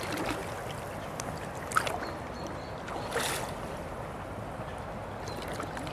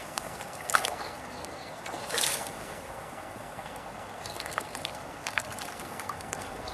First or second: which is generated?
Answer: second